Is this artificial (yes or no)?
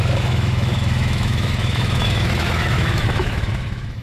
yes